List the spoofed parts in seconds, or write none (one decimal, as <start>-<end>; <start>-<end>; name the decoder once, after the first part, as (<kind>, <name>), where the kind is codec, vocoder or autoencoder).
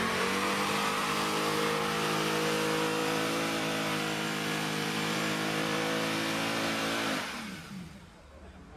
3.0-7.7 (vocoder, BigVGAN v2)